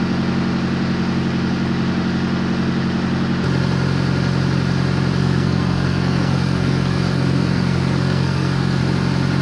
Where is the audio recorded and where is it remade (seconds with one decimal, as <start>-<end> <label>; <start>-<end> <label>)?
0.0-5.2 recorded; 5.2-8.8 remade; 8.8-9.4 recorded